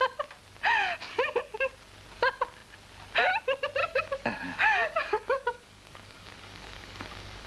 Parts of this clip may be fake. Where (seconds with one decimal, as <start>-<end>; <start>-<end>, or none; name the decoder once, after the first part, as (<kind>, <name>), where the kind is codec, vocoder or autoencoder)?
3.8-7.5 (codec, DAC)